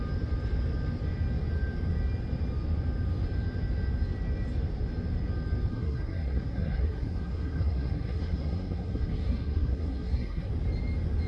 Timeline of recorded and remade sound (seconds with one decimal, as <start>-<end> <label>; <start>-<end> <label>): 0.0-5.7 recorded; 5.7-10.5 remade; 10.5-11.3 recorded